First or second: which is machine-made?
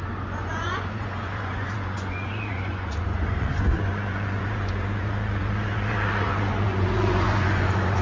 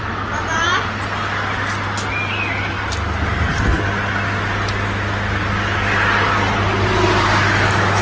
first